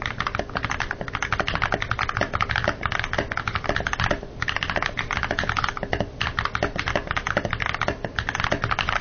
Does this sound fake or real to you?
real